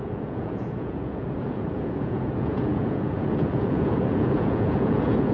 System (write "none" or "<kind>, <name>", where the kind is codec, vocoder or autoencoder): vocoder, Vocos